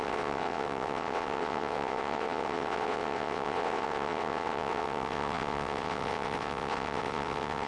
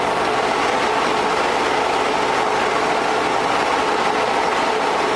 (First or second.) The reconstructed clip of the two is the first